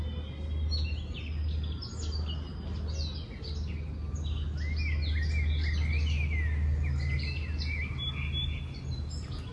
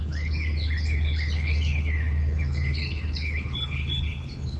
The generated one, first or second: second